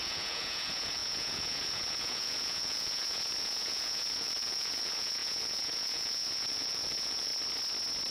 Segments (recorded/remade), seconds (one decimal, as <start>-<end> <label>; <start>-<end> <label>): 0.0-7.3 remade; 7.3-8.1 recorded

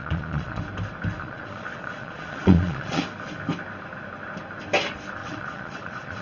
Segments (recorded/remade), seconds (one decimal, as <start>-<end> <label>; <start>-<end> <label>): 0.0-0.6 remade; 0.6-1.2 recorded; 1.2-3.0 remade; 3.0-5.2 recorded; 5.2-6.2 remade

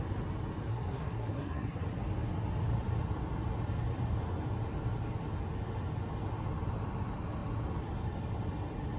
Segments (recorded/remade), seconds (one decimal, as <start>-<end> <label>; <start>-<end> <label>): 0.0-0.7 recorded; 0.7-1.8 remade; 1.8-9.0 recorded